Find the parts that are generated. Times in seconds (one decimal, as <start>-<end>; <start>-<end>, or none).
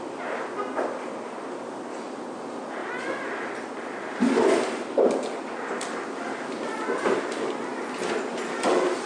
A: none